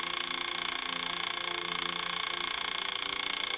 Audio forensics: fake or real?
fake